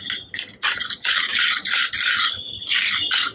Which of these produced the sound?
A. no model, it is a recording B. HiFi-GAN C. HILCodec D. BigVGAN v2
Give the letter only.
A